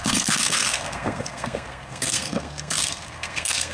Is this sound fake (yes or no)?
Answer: yes